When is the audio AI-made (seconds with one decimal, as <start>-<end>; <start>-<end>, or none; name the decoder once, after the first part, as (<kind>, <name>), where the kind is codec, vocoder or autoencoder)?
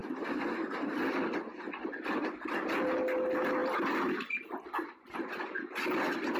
0.0-2.4 (vocoder, BigVGAN v2); 3.6-5.3